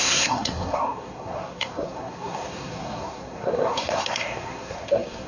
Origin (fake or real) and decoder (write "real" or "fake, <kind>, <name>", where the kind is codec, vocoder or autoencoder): fake, codec, SNAC